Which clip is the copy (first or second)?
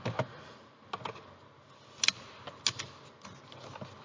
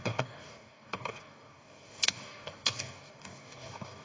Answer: second